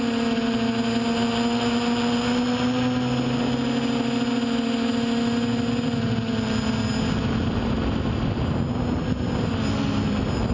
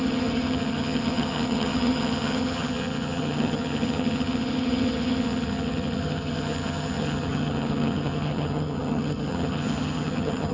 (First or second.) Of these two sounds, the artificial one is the second